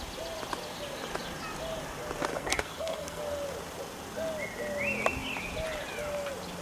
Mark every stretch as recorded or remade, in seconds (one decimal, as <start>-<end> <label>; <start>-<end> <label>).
0.0-2.3 recorded; 2.3-3.2 remade; 3.2-6.6 recorded